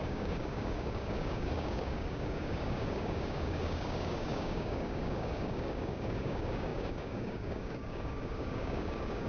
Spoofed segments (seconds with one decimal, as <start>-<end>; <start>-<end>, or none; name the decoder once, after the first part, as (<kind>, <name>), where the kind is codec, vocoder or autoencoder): 0.0-9.3 (codec, DAC)